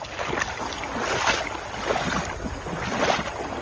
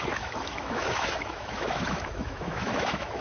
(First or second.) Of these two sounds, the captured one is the first